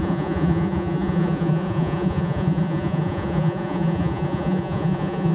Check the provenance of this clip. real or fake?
fake